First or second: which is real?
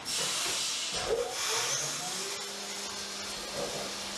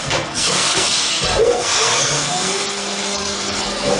first